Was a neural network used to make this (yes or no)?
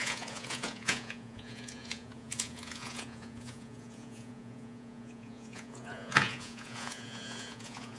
yes